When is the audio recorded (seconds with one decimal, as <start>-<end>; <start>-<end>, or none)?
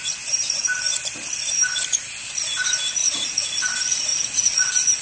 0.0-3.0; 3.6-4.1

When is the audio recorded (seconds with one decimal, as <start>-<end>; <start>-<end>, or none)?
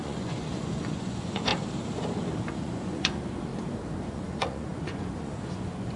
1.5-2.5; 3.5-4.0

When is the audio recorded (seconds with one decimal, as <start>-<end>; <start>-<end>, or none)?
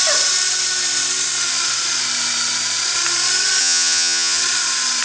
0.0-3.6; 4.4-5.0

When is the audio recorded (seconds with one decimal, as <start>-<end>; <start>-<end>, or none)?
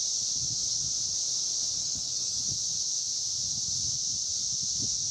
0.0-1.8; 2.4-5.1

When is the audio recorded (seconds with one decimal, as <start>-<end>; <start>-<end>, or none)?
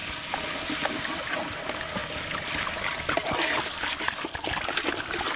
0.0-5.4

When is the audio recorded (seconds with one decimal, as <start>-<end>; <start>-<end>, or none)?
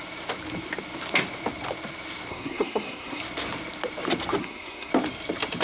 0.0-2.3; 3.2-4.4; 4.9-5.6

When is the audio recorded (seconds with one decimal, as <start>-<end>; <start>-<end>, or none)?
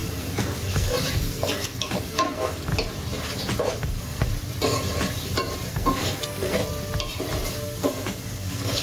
2.7-3.6; 4.3-5.7; 6.6-7.5